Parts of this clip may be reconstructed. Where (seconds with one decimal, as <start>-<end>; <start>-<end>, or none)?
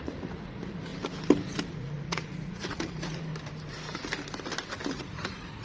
0.0-0.9; 1.7-3.3; 4.9-5.6